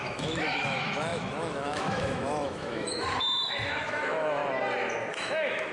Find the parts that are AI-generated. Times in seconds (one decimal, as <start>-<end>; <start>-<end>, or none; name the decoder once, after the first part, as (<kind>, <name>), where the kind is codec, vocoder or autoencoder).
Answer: 0.0-4.4 (autoencoder, DAC-VAE); 5.1-5.7